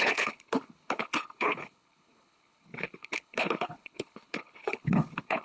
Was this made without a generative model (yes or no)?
no